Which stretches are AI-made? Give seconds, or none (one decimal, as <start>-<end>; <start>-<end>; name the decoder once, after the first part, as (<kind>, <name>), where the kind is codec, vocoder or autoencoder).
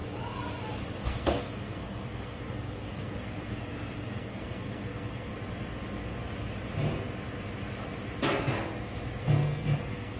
1.0-5.3 (codec, SNAC); 9.2-10.2